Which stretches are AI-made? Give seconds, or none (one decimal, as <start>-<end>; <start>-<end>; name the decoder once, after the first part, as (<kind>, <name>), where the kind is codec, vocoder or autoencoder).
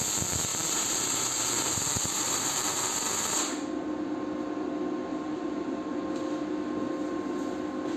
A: 0.5-2.8 (vocoder, BigVGAN v2); 5.1-6.0